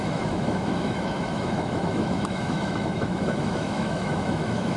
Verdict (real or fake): fake